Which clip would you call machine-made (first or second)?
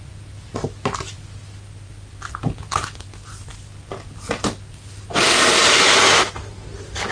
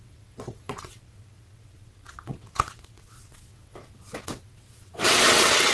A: second